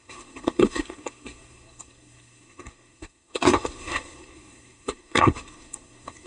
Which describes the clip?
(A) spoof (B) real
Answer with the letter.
A